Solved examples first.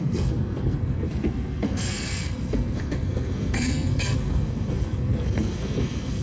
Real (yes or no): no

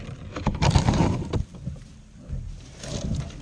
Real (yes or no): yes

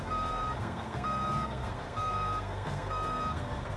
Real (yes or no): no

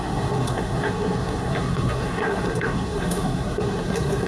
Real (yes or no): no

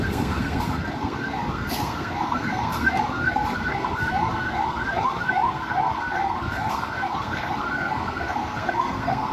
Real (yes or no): no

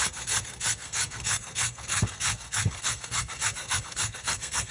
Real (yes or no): no